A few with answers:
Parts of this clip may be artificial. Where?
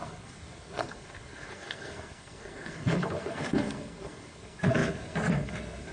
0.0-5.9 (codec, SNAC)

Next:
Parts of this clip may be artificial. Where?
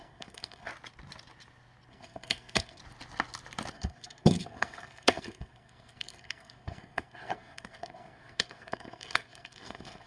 0.0-0.7 (codec, SNAC); 1.9-2.8; 3.7-10.1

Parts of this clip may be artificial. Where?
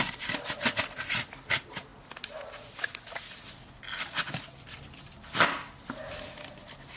none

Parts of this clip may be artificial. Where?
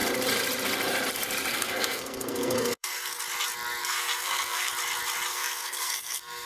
1.5-3.2 (codec, SNAC); 3.8-4.7; 5.3-6.5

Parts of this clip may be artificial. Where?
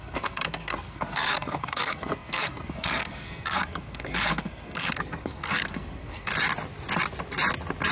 0.0-6.3 (codec, SNAC)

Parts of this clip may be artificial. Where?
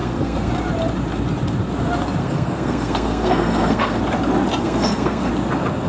0.0-0.5 (codec, SNAC); 2.2-4.0; 4.6-5.3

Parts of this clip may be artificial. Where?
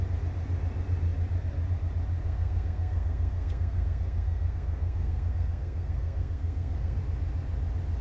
2.2-7.0 (codec, SNAC)